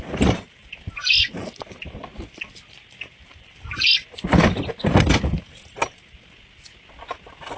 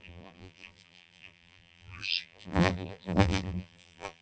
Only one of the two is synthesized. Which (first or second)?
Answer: second